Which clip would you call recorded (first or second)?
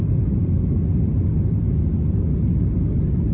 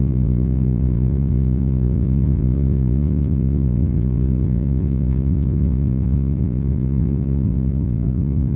first